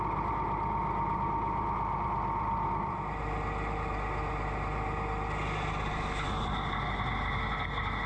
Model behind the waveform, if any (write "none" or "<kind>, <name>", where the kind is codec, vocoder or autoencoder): none